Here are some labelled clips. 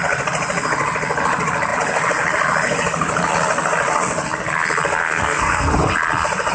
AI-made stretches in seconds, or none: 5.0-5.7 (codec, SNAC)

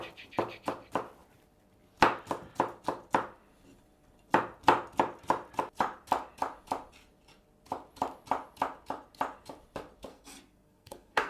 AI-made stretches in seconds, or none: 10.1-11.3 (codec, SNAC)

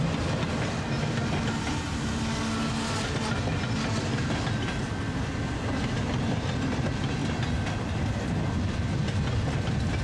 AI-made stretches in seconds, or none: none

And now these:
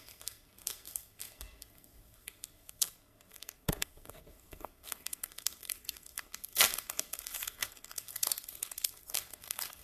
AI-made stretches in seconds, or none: 0.0-9.8 (codec, SNAC)

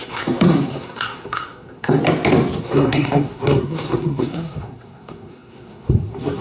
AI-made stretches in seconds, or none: 0.0-2.0 (codec, SNAC); 2.6-6.4